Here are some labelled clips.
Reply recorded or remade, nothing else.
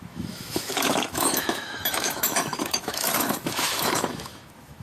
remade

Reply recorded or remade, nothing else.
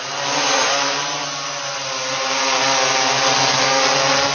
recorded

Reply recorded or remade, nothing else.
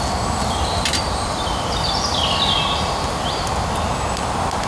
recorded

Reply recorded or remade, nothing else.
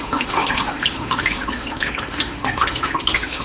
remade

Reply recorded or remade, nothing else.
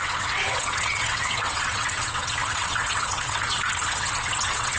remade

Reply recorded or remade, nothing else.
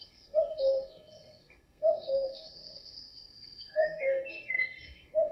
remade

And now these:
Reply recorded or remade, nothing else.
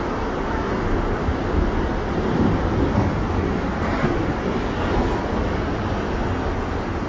recorded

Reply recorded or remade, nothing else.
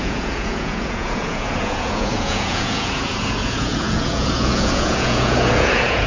remade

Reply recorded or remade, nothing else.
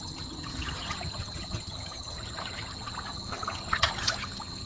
remade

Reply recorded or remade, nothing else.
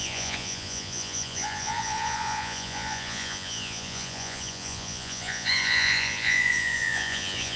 remade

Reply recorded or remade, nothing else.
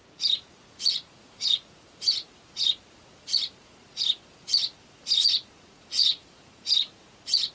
remade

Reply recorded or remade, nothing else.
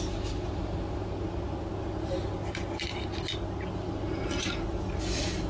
recorded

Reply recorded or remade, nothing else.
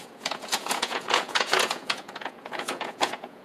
remade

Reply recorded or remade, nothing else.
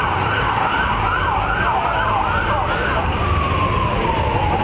remade